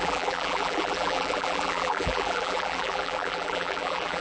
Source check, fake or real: fake